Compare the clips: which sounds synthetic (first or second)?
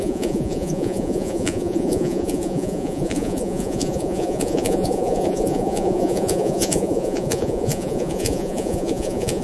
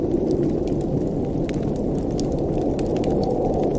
first